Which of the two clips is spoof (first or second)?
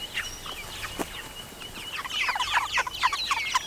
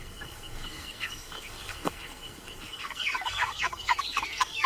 second